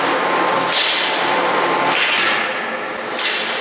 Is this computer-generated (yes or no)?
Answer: no